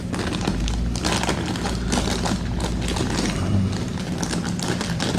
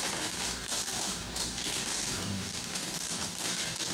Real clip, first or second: first